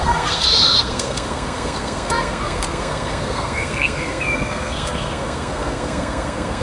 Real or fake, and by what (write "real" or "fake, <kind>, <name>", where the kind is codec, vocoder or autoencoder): fake, codec, SNAC